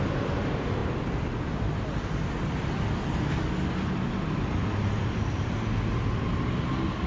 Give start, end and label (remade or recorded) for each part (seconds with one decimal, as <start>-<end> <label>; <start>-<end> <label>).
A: 0.0-7.1 recorded